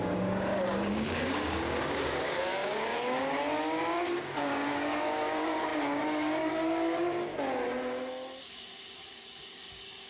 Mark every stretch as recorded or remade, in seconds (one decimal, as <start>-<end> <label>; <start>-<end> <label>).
0.0-7.3 remade; 7.3-8.4 recorded; 8.4-10.1 remade